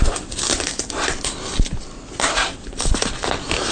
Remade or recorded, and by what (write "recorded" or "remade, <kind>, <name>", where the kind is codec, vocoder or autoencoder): recorded